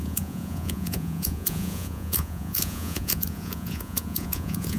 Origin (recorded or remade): remade